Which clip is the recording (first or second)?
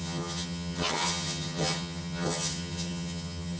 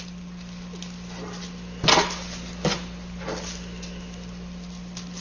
second